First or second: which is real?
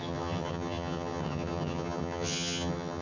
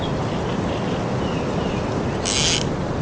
second